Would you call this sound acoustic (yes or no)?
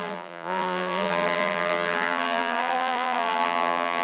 no